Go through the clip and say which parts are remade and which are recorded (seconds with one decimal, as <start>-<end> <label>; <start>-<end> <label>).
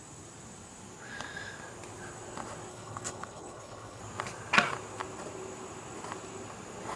0.0-2.7 recorded; 2.7-4.0 remade; 4.0-7.0 recorded